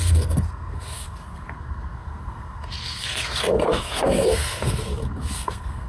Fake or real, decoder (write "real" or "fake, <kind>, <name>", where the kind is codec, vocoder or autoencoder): fake, codec, SNAC